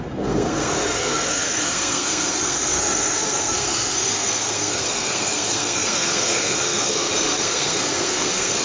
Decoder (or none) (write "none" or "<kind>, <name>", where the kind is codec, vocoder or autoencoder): codec, SNAC